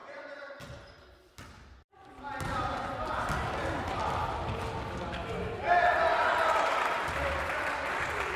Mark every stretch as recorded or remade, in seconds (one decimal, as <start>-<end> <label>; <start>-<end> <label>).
0.0-8.4 recorded